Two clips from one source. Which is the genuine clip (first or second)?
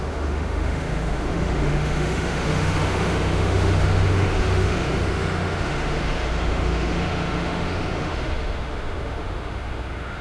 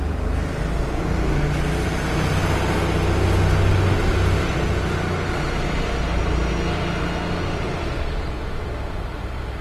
second